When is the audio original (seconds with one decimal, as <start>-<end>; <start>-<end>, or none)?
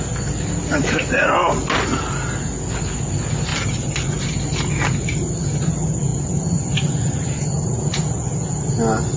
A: 0.0-3.5; 4.4-9.2